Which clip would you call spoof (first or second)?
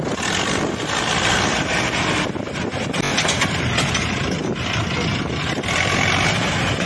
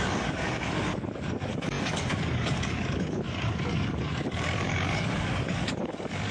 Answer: second